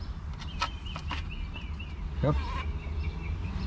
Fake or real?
real